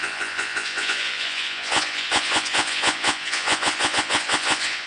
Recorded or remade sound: remade